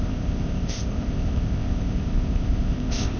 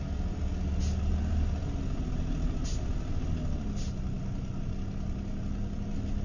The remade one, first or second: first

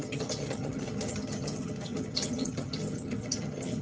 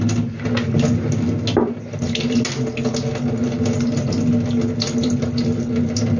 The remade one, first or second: first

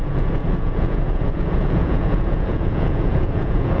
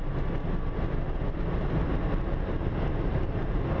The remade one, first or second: first